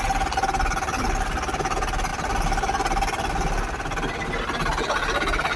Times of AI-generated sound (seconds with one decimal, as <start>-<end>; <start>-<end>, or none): none

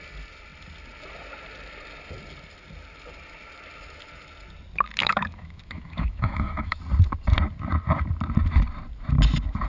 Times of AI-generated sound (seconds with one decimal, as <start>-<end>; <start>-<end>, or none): 5.0-6.8

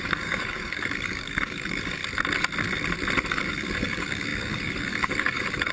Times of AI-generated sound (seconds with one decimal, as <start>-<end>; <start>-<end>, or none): 0.0-2.0; 3.3-5.7

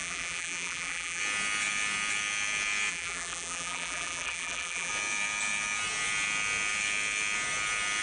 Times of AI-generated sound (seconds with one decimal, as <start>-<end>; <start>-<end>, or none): 0.0-1.2; 2.9-4.9

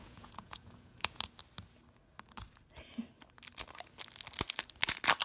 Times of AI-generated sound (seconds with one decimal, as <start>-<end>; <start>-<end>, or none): 0.0-1.2

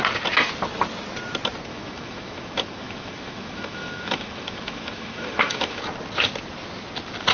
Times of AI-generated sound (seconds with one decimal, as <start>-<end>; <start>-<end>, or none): 1.7-5.8

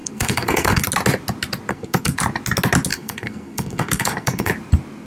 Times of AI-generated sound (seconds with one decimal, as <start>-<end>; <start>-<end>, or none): 0.0-0.8; 1.7-2.2; 2.9-4.5

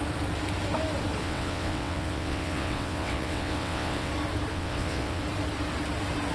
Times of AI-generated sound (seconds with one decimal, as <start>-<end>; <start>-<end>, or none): 1.2-4.1; 4.5-5.2